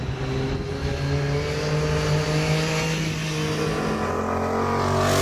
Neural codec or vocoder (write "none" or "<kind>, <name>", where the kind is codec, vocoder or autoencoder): none